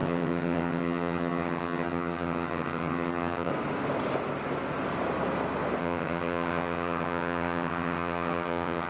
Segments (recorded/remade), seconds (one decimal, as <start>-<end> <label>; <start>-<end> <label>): 0.0-3.5 remade; 3.5-5.8 recorded; 5.8-8.9 remade

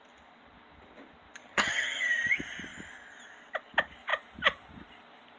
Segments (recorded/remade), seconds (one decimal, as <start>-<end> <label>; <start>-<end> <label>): 0.0-1.4 recorded; 1.4-2.3 remade; 2.3-5.4 recorded